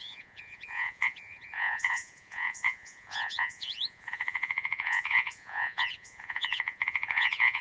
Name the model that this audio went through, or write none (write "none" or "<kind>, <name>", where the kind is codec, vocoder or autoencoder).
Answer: vocoder, Vocos